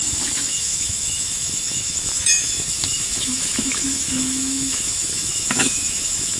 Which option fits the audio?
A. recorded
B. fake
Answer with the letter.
B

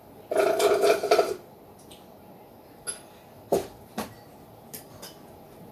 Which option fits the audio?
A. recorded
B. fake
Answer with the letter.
A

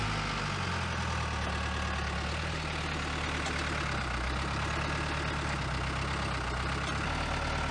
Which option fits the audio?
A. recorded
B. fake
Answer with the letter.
A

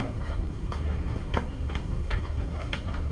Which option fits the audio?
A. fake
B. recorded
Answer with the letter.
A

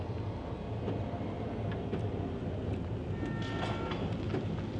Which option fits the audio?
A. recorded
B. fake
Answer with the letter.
A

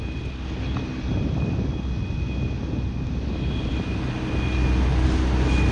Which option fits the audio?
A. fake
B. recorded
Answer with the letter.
B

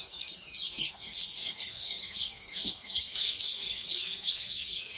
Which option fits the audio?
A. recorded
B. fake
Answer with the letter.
B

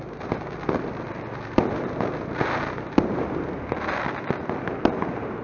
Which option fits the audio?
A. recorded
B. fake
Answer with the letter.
A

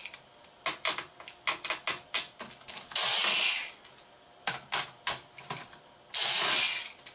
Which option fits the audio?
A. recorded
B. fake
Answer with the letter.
A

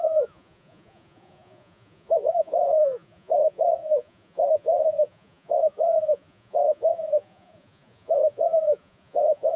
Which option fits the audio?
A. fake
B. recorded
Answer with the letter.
A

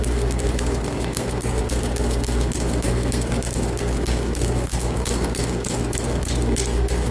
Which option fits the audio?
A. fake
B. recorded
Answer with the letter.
A